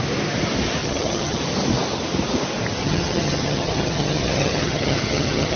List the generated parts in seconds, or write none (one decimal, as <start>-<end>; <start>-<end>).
0.8-1.4; 2.8-5.6